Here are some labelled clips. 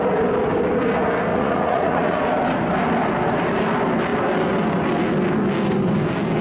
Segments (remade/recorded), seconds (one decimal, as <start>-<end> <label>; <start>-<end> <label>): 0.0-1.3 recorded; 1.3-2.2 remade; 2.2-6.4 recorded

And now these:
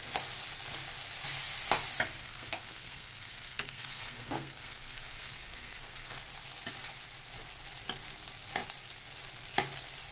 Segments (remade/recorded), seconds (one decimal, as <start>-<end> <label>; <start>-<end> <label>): 0.0-2.2 recorded; 2.2-6.2 remade; 6.2-10.1 recorded

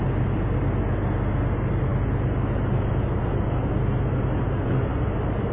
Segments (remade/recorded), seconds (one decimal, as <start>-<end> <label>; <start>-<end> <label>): 0.0-5.5 recorded

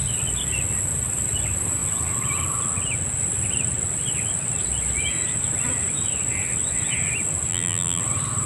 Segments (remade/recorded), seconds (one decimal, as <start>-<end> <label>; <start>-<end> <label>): 0.0-7.5 recorded; 7.5-8.0 remade; 8.0-8.5 recorded